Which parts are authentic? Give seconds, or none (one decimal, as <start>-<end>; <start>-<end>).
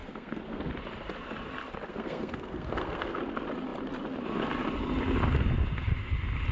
0.7-1.9; 3.2-6.5